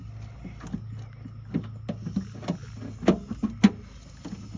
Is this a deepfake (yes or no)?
no